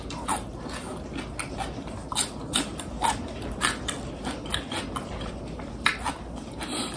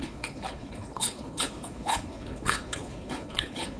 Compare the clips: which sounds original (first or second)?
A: first